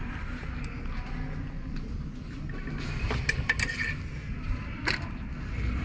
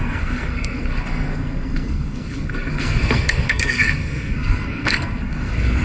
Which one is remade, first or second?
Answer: second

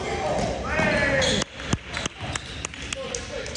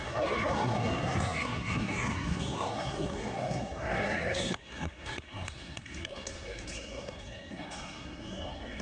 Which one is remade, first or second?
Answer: second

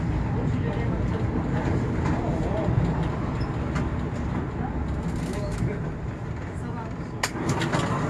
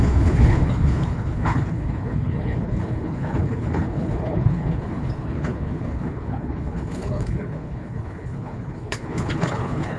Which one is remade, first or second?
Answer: second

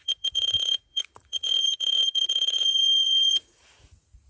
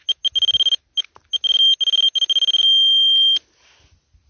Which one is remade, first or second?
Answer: first